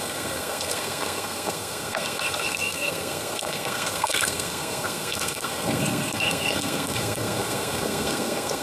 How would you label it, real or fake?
fake